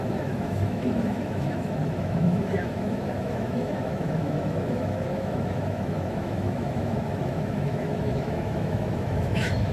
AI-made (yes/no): yes